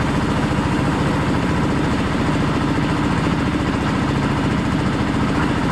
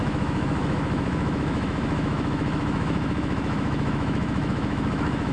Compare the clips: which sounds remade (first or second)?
second